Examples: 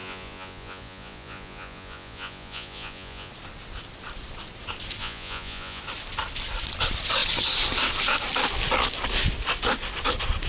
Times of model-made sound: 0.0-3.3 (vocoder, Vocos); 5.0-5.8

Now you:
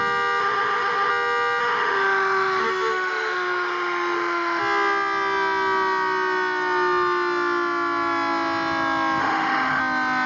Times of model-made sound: 0.4-1.1 (autoencoder, DAC-VAE); 1.6-4.6; 9.2-9.8

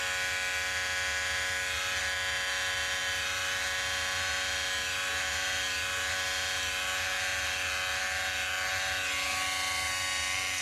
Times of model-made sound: none

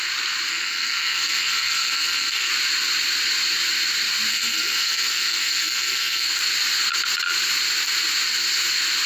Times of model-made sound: 0.5-2.5 (codec, SNAC); 4.3-6.3

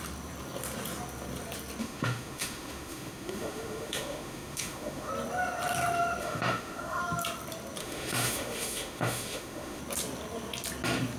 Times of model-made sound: 1.8-5.1 (autoencoder, DAC-VAE); 6.2-7.0; 7.8-9.8